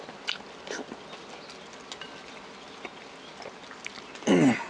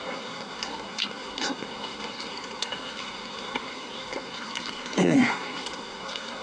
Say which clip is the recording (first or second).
first